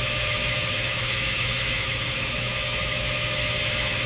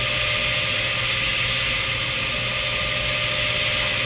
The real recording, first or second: second